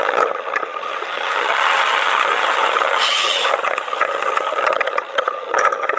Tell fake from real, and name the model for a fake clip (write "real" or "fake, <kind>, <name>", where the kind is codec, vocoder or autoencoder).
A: fake, vocoder, HiFi-GAN